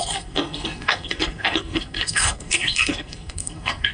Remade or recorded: remade